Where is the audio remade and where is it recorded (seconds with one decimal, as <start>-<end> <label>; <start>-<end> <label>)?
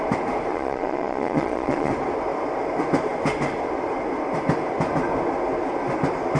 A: 0.0-0.5 recorded; 0.5-1.9 remade; 1.9-6.4 recorded